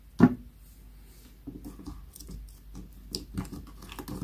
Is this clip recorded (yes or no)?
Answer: yes